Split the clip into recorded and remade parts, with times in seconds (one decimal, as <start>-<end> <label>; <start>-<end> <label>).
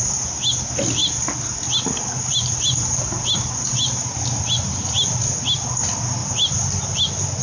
0.0-7.4 recorded